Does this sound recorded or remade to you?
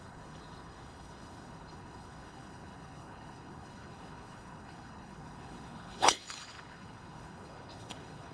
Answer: remade